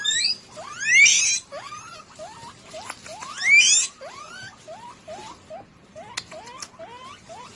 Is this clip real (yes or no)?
yes